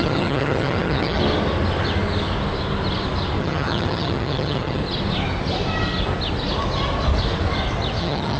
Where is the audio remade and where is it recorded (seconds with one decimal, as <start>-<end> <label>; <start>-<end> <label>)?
0.0-1.2 remade; 1.2-3.4 recorded; 3.4-4.8 remade; 4.8-8.0 recorded; 8.0-8.4 remade